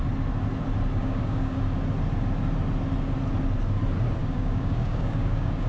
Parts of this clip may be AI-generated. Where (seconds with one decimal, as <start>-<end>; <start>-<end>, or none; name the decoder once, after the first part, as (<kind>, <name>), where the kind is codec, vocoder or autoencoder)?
1.0-1.6 (codec, DAC); 4.2-5.7